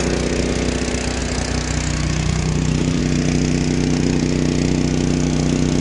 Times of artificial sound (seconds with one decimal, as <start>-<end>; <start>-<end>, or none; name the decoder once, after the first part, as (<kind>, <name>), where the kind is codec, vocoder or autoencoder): 1.2-3.0 (vocoder, BigVGAN v2)